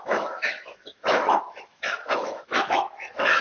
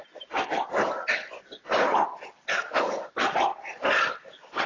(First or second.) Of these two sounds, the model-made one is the first